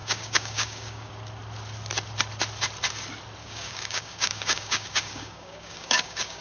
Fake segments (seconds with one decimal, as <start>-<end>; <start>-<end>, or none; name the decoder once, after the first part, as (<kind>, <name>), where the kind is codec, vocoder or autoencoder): 0.0-1.1 (codec, DAC); 3.4-6.4